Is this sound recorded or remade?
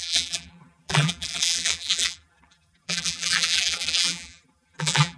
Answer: remade